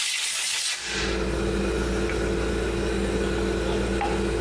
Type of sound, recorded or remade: recorded